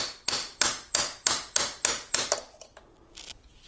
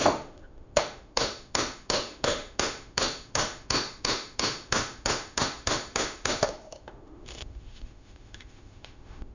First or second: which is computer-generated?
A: second